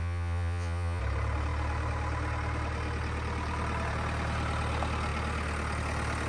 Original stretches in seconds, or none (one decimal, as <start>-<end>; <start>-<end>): 1.0-6.3